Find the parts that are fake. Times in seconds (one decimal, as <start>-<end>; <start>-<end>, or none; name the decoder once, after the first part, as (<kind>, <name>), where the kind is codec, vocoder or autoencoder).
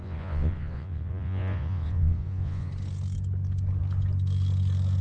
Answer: 0.0-2.7 (vocoder, Vocos)